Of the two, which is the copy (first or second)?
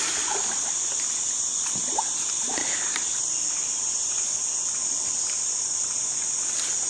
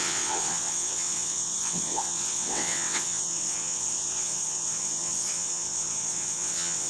second